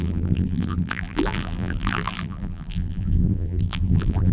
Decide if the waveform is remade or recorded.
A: remade